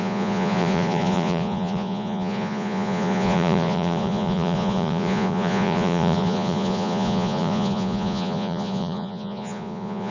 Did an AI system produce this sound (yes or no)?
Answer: yes